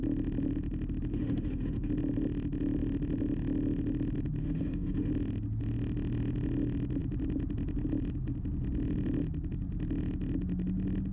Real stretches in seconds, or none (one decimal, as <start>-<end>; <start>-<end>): 0.0-1.1; 1.9-4.4; 5.1-11.1

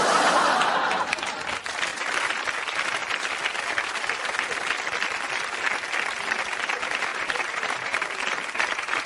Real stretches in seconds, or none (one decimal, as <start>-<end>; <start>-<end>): 0.0-1.9; 2.5-7.1; 8.1-9.1

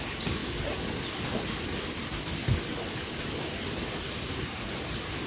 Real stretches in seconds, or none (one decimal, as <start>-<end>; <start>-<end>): 0.0-5.3

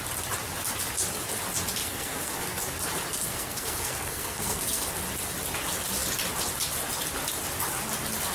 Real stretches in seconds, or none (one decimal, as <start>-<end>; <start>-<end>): 0.0-1.8; 2.6-3.1; 4.9-8.3

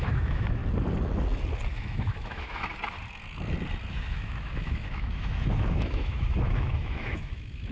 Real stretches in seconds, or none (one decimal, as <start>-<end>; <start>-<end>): 0.6-1.7; 2.7-3.9

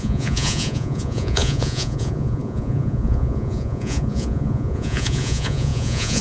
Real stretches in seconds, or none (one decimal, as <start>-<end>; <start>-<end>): none

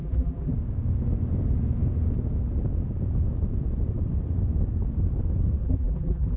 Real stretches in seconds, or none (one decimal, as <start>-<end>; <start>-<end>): 0.5-5.6

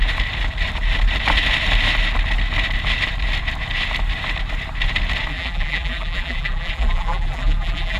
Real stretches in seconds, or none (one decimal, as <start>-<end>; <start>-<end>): 0.0-5.3